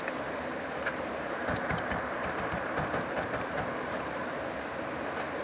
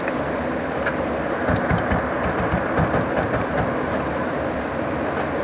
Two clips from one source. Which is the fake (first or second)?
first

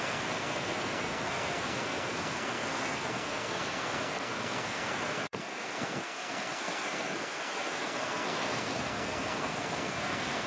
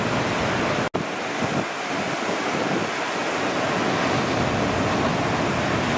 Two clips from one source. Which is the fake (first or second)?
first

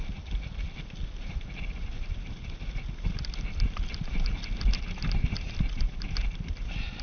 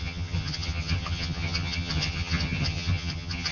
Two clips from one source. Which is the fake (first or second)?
second